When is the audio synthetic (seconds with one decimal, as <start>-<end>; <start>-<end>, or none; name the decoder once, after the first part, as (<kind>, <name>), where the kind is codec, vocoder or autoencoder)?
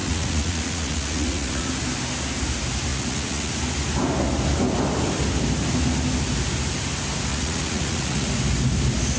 0.0-1.7 (vocoder, Vocos); 2.9-3.5; 7.3-8.3